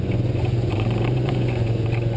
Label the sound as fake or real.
fake